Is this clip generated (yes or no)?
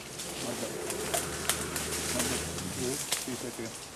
no